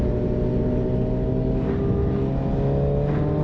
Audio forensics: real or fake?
real